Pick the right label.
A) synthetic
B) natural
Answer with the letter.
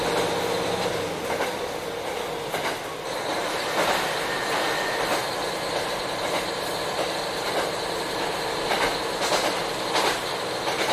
B